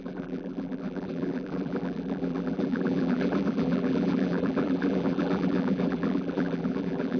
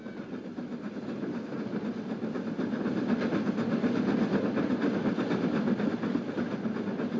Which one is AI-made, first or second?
first